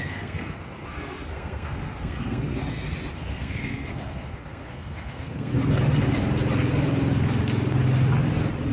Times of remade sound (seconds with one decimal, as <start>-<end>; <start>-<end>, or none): 0.0-2.6; 3.1-5.5